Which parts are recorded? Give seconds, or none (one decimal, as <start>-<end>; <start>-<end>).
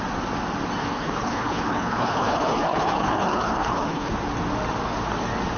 0.0-0.8; 4.1-5.6